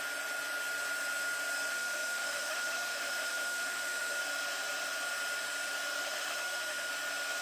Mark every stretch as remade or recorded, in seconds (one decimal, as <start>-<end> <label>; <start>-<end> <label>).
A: 0.0-1.7 recorded; 1.7-4.2 remade; 4.2-6.0 recorded; 6.0-6.9 remade; 6.9-7.4 recorded